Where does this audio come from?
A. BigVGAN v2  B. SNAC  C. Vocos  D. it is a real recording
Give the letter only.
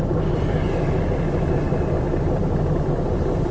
A